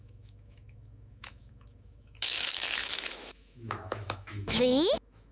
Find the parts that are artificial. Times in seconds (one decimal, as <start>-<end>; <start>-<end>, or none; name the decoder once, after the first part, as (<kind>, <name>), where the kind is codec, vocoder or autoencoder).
0.0-5.3 (autoencoder, DAC-VAE)